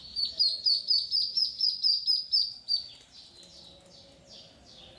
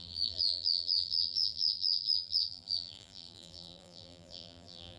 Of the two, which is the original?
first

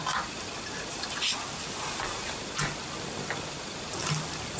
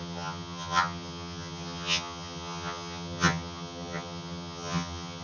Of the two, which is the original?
first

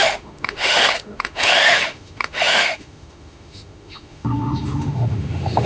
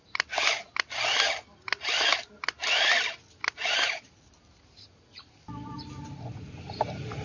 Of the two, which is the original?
second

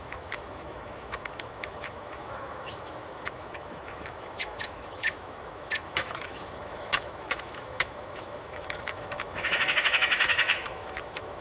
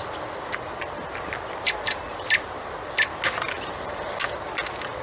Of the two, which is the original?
second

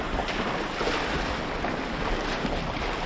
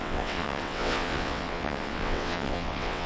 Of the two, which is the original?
first